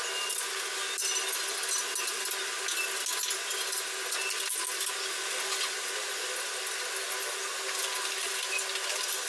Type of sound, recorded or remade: recorded